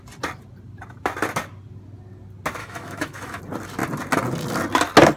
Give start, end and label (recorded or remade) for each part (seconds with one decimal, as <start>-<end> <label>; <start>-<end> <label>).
0.0-2.6 recorded; 2.6-3.4 remade; 3.4-5.2 recorded